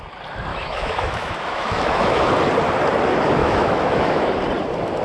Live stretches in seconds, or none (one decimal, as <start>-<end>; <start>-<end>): 0.0-0.5; 2.3-3.4; 4.3-5.0